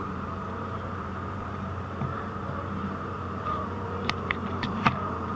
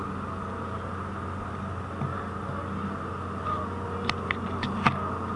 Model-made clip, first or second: first